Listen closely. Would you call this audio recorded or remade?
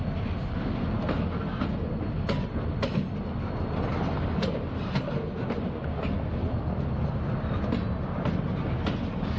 recorded